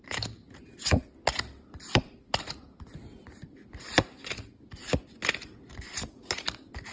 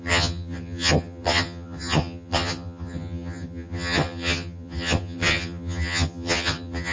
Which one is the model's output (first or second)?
second